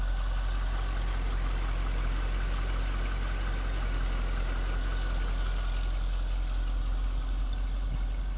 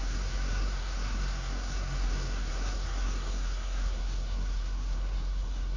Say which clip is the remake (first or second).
second